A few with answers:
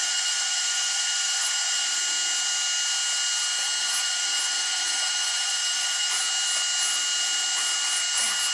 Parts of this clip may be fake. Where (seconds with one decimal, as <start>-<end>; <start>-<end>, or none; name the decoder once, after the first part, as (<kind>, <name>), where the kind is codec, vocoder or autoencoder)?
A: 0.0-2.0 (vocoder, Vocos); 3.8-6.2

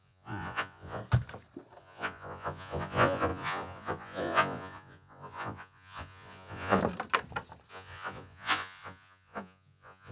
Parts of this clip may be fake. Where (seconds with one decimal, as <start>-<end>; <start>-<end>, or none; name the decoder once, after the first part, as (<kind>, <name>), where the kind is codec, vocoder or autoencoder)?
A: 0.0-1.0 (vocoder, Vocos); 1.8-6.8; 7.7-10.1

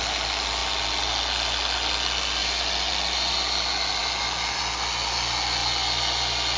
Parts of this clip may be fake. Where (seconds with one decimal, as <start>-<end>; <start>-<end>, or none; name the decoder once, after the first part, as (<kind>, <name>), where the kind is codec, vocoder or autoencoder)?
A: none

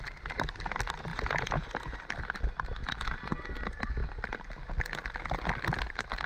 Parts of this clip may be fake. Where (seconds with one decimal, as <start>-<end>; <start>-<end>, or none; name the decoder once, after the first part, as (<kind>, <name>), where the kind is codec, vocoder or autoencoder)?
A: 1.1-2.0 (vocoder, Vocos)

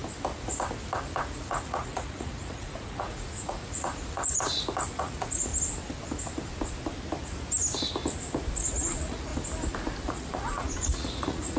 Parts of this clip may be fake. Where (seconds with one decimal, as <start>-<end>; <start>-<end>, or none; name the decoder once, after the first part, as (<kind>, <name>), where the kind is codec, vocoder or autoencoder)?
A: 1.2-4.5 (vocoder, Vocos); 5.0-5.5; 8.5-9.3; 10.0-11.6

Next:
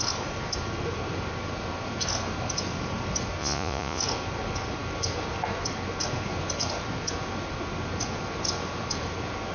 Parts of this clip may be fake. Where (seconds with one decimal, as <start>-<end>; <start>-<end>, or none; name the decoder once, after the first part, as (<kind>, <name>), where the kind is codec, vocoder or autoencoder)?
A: 3.4-4.0 (vocoder, Vocos)